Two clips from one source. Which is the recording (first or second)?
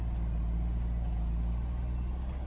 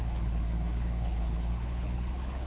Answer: first